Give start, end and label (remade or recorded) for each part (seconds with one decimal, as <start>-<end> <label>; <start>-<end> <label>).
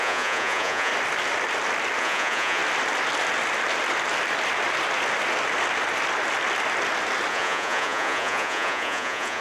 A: 0.0-0.9 remade; 0.9-2.0 recorded; 2.0-2.6 remade; 2.6-7.3 recorded; 7.3-9.4 remade